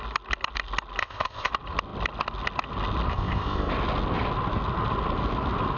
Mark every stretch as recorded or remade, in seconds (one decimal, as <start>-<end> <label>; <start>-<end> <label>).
0.0-1.0 recorded; 1.0-1.5 remade; 1.5-3.1 recorded; 3.1-3.7 remade; 3.7-5.8 recorded